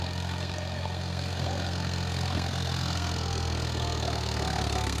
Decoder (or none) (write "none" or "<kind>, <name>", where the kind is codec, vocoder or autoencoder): codec, SNAC